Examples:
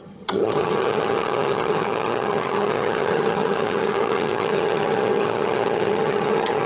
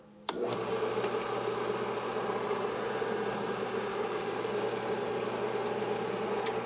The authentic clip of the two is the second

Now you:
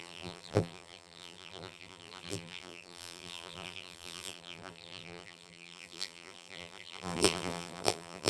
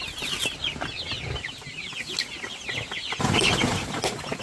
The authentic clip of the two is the second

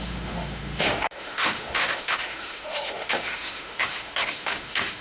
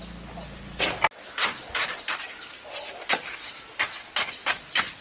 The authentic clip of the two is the second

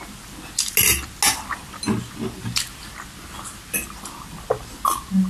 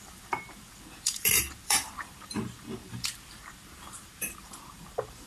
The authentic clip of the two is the first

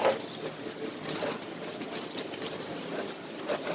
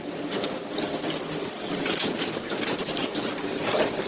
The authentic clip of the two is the first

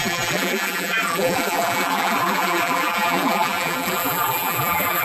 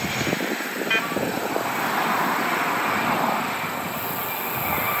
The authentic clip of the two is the second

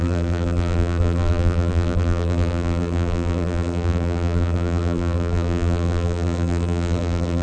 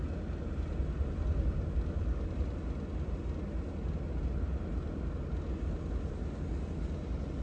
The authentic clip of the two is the second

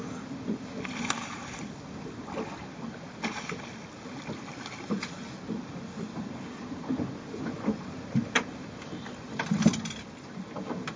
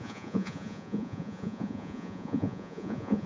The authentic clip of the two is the first